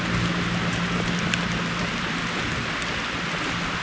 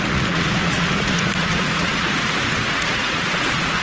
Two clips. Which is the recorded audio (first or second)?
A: first